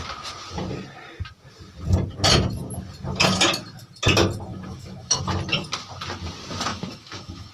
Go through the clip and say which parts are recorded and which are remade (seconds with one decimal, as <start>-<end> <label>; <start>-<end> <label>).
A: 0.0-4.5 recorded; 4.5-5.2 remade; 5.2-6.7 recorded; 6.7-7.5 remade